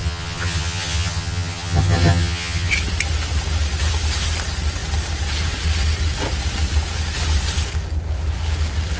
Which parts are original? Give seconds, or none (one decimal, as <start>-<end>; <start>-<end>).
2.7-9.0